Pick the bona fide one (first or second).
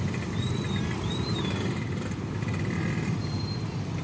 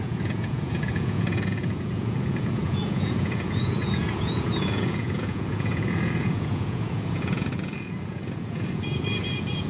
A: first